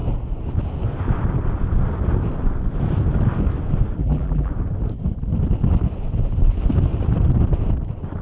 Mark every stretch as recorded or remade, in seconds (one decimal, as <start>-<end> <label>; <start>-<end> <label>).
0.0-4.0 recorded; 4.0-4.5 remade; 4.5-8.2 recorded